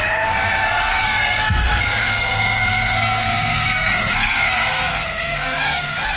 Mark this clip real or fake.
fake